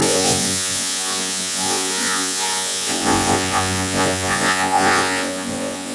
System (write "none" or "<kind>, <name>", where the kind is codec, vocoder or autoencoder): vocoder, Vocos